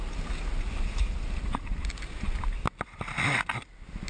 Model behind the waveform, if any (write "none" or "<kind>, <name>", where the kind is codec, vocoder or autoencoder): none